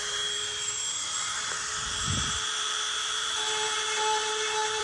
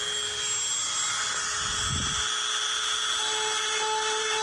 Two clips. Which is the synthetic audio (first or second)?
first